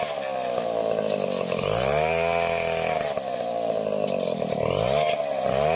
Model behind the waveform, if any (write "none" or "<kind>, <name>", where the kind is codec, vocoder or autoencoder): none